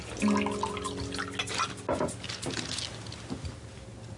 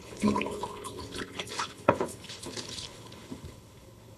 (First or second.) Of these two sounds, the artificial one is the second